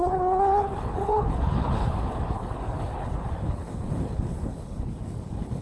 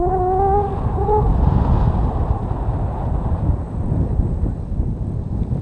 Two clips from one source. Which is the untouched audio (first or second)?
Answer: second